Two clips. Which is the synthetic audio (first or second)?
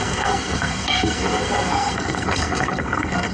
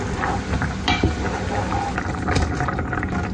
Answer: first